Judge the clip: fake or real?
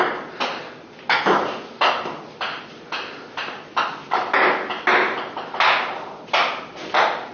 real